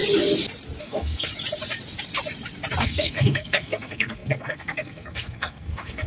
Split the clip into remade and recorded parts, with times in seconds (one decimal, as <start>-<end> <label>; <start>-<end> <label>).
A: 0.0-0.8 recorded; 0.8-1.3 remade; 1.3-2.8 recorded; 2.8-6.1 remade